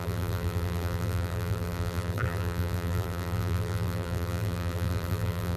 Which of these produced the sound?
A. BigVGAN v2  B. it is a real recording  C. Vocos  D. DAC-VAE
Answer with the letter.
A